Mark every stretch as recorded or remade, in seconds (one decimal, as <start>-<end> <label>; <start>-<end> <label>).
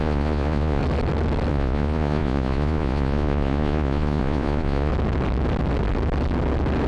0.0-0.8 remade; 0.8-1.5 recorded; 1.5-4.9 remade; 4.9-6.9 recorded